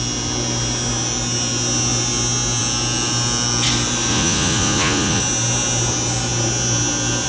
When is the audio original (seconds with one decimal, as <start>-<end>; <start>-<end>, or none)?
0.0-4.1; 5.2-7.3